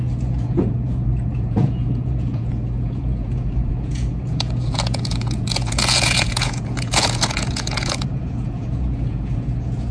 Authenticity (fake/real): fake